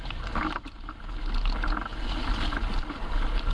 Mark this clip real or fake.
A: real